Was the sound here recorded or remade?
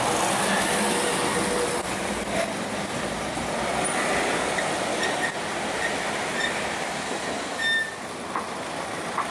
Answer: recorded